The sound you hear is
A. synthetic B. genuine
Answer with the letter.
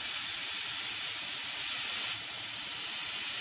B